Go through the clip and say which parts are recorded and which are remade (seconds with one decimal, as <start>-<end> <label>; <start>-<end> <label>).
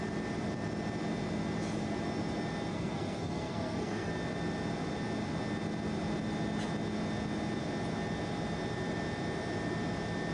0.0-2.7 recorded; 2.7-4.1 remade; 4.1-10.3 recorded